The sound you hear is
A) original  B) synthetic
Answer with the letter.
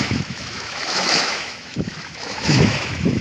B